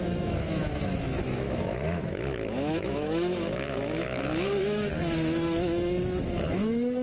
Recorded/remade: remade